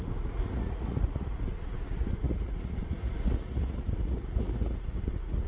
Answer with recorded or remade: remade